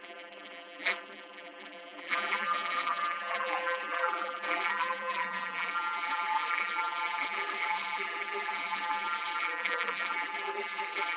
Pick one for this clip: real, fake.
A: fake